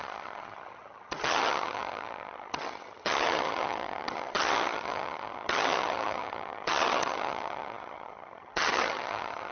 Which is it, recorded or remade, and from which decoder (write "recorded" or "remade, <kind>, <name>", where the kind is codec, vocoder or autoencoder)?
remade, vocoder, HiFi-GAN